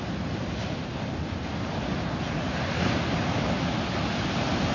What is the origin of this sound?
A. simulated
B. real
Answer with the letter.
B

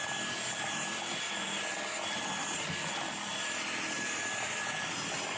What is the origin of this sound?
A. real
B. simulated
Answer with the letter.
A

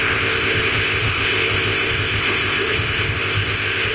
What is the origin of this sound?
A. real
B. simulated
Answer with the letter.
B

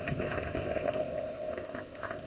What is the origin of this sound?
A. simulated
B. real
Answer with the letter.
A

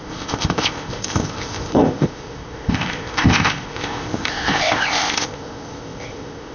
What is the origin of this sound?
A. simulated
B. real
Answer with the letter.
A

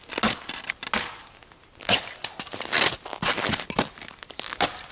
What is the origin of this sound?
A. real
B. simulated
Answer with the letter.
A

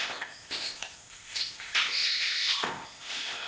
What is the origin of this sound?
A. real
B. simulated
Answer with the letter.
B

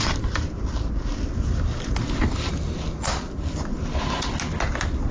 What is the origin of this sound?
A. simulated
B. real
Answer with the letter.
B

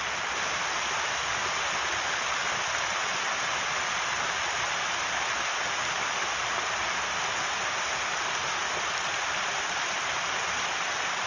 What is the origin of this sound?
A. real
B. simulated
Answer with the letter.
A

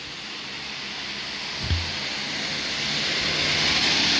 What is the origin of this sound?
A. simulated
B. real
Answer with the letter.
B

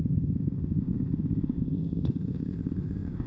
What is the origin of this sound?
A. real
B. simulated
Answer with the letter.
B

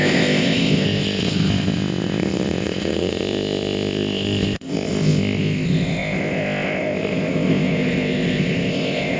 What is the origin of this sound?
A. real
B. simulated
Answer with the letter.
B